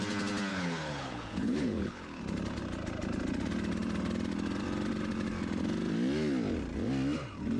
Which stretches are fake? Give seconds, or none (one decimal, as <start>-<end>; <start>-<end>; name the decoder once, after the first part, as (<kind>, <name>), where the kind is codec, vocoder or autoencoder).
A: 0.5-2.2 (codec, HILCodec)